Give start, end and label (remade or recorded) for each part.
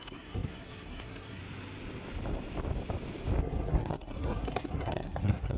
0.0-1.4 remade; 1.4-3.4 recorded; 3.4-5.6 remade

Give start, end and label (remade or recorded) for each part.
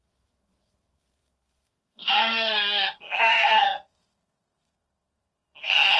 0.0-6.0 remade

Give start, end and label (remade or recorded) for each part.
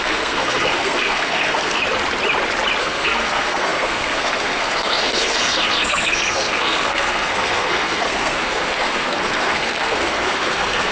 0.0-1.8 remade; 1.8-2.8 recorded; 2.8-10.9 remade